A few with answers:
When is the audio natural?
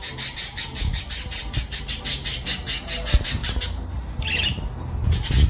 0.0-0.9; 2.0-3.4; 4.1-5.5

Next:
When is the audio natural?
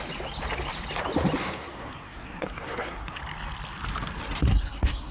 0.0-1.4; 3.2-4.5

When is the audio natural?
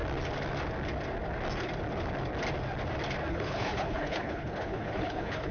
0.0-3.3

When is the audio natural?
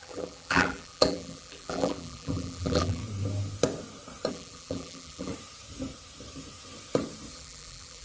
3.0-4.3; 5.3-7.3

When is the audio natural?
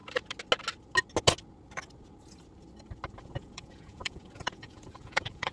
0.0-3.2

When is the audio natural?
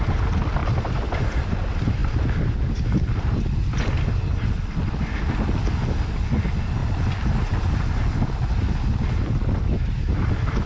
0.0-10.7